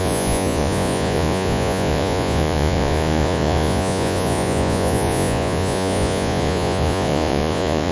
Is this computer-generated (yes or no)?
yes